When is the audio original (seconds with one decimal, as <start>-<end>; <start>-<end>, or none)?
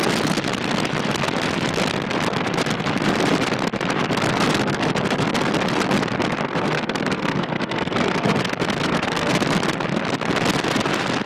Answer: 0.0-6.5; 8.4-8.8; 9.3-11.3